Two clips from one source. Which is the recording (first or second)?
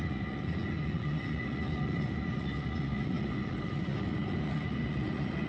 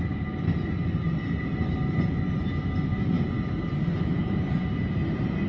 second